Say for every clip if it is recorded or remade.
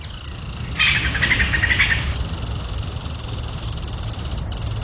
recorded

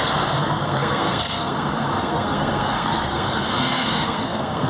remade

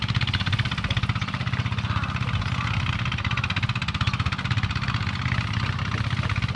recorded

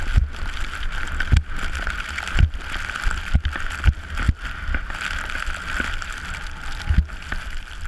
recorded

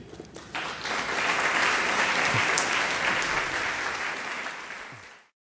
recorded